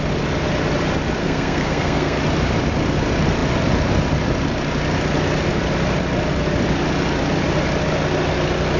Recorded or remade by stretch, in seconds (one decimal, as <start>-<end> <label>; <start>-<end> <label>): 0.0-1.2 recorded; 1.2-2.2 remade; 2.2-8.8 recorded